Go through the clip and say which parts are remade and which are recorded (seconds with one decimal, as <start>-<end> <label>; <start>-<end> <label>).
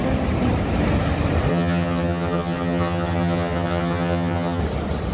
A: 0.0-1.5 recorded; 1.5-4.6 remade; 4.6-5.1 recorded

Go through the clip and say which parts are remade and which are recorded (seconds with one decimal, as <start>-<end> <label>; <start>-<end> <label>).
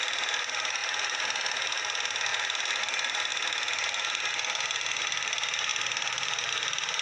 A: 0.0-2.3 recorded; 2.3-2.8 remade; 2.8-3.3 recorded; 3.3-4.3 remade; 4.3-5.7 recorded; 5.7-6.5 remade; 6.5-7.0 recorded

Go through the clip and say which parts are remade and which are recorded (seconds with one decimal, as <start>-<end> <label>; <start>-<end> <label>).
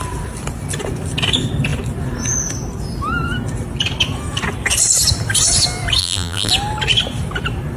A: 0.0-6.0 recorded; 6.0-6.5 remade; 6.5-7.8 recorded